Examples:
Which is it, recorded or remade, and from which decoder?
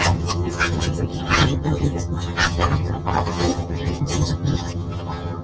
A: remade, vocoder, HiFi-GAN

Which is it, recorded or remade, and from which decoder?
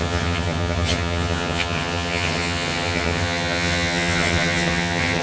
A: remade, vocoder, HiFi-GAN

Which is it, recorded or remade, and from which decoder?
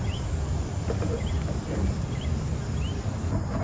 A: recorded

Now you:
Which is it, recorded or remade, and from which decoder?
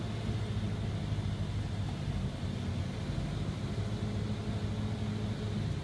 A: recorded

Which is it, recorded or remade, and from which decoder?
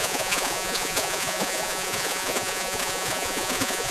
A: remade, vocoder, Vocos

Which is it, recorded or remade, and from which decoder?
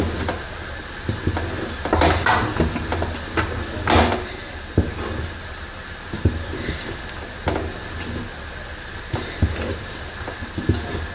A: recorded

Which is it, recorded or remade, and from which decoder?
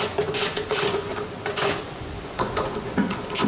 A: remade, vocoder, Vocos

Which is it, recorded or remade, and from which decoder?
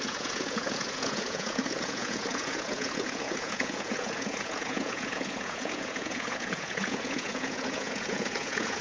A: remade, vocoder, Vocos